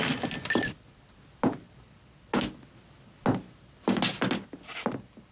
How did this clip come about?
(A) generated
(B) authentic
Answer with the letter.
B